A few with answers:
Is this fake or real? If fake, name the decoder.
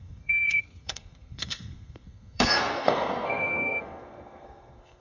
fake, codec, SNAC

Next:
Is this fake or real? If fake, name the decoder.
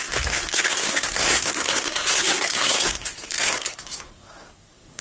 fake, codec, SNAC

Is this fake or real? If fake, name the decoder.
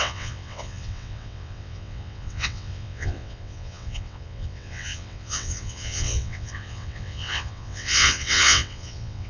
fake, vocoder, WaveNeXt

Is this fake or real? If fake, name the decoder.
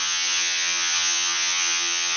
fake, vocoder, HiFi-GAN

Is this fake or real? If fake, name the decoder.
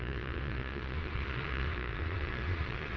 fake, vocoder, Vocos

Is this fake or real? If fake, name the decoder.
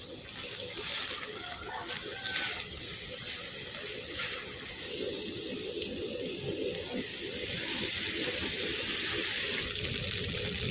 real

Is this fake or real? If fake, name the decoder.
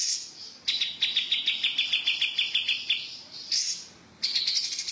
real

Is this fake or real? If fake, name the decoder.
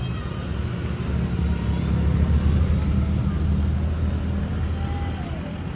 real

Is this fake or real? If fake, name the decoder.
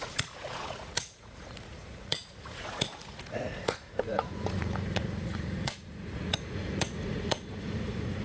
fake, vocoder, Vocos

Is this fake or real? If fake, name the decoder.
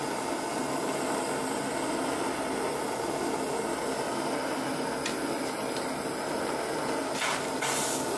real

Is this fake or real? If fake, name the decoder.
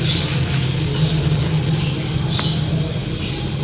real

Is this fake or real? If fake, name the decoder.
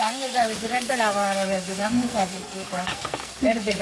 fake, codec, SNAC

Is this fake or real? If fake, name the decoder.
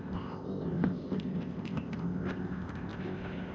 fake, codec, ZipCodec